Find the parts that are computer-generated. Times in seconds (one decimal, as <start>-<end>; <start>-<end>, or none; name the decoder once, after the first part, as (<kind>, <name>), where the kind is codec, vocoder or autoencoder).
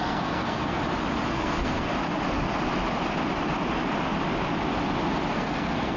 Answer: 0.0-0.8 (codec, SNAC); 1.3-1.9; 5.3-6.0